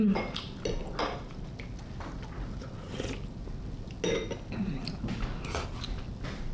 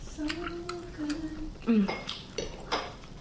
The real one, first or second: first